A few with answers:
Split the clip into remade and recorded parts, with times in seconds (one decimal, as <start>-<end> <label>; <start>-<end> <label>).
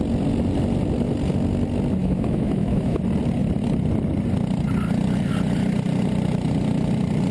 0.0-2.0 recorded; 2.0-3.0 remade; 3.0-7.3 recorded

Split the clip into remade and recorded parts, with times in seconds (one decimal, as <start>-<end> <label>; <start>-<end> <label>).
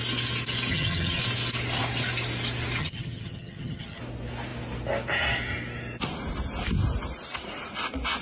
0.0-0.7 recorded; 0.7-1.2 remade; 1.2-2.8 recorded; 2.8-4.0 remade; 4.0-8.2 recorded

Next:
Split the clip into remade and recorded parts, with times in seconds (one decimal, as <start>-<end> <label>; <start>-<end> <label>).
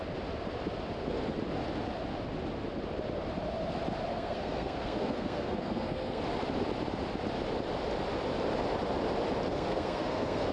0.0-4.1 recorded; 4.1-6.2 remade; 6.2-9.5 recorded; 9.5-10.5 remade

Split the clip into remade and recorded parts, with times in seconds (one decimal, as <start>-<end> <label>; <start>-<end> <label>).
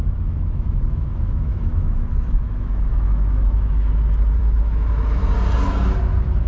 0.0-3.9 remade; 3.9-4.4 recorded; 4.4-5.2 remade; 5.2-6.5 recorded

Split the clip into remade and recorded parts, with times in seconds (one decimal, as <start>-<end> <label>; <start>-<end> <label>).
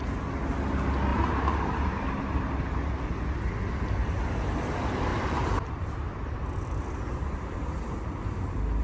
0.0-1.1 recorded; 1.1-2.9 remade; 2.9-5.1 recorded; 5.1-5.6 remade; 5.6-8.8 recorded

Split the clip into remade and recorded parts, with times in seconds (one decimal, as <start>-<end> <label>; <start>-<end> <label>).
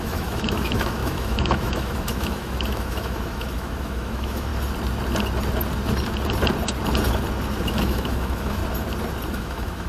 0.0-4.5 remade; 4.5-7.6 recorded; 7.6-8.6 remade; 8.6-9.3 recorded; 9.3-9.9 remade